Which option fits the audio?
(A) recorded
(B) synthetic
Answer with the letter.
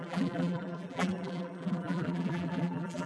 B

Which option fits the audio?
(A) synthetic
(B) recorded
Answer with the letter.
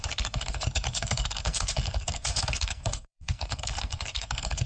A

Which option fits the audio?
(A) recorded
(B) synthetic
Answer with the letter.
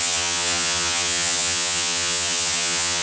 B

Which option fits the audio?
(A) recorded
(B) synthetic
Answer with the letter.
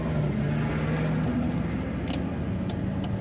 A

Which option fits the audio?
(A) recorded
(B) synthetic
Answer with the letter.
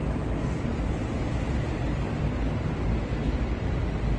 A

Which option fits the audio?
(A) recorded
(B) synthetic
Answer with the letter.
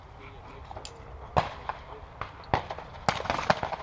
A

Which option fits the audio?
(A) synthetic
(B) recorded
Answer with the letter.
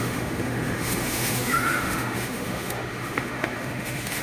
A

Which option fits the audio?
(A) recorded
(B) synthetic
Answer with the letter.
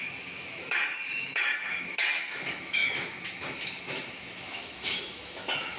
B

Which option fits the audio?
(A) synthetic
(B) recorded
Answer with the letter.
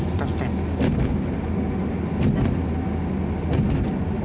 B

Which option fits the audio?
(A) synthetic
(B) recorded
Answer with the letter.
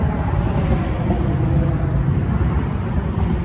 A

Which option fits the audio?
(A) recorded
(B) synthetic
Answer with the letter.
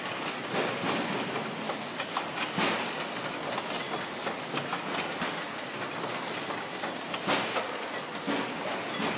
A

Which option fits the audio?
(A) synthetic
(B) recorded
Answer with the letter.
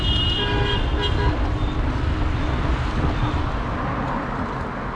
B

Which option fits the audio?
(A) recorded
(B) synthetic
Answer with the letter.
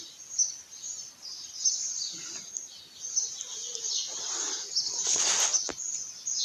A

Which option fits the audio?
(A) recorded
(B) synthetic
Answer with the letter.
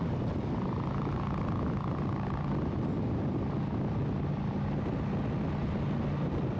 A